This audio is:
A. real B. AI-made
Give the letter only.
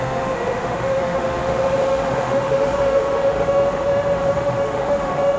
B